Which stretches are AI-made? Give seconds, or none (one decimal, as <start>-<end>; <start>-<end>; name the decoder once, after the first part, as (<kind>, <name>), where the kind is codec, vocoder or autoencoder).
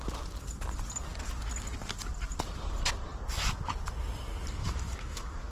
4.6-5.5 (autoencoder, DAC-VAE)